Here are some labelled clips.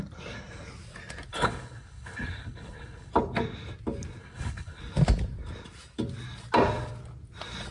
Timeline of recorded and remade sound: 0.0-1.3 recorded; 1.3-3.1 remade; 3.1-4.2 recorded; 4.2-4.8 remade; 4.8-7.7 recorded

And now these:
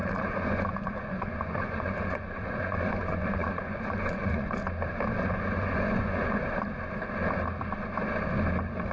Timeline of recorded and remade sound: 0.0-4.6 remade; 4.6-5.2 recorded; 5.2-6.4 remade; 6.4-8.9 recorded